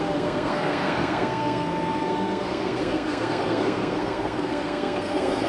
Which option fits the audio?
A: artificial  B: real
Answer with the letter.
A